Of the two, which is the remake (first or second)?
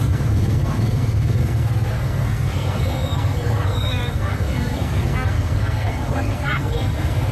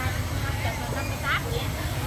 first